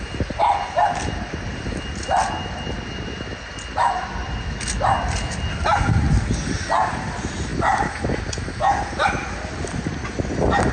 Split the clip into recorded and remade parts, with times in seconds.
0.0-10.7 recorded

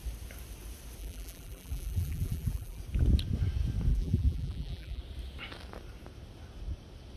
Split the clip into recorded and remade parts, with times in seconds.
0.0-1.0 recorded; 1.0-2.8 remade; 2.8-3.9 recorded; 3.9-5.0 remade; 5.0-7.2 recorded

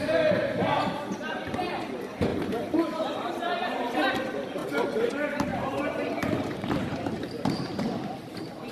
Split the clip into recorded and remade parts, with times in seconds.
0.0-2.3 recorded; 2.3-2.8 remade; 2.8-5.5 recorded; 5.5-8.7 remade

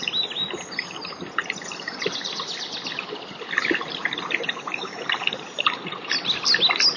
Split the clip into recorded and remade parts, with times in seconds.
0.0-4.0 recorded; 4.0-6.0 remade; 6.0-7.0 recorded

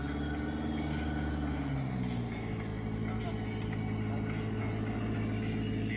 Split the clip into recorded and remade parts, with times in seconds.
0.0-6.0 recorded

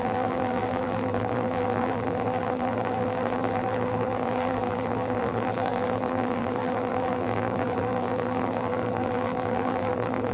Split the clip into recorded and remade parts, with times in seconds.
0.0-10.3 remade

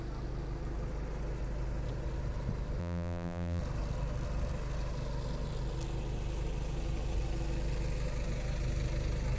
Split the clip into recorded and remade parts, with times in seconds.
0.0-2.8 recorded; 2.8-3.6 remade; 3.6-9.4 recorded